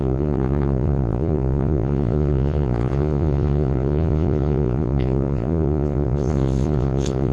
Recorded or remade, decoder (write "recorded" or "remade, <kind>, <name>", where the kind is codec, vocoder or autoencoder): remade, vocoder, Vocos